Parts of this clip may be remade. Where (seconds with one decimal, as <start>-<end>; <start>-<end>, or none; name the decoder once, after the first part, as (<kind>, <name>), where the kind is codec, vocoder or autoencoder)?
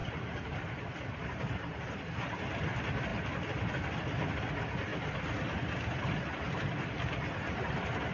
0.0-2.0 (vocoder, BigVGAN v2)